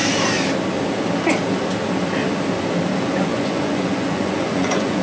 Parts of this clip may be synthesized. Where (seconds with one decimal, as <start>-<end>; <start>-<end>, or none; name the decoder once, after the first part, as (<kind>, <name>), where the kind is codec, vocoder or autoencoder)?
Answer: 3.0-5.0 (vocoder, Vocos)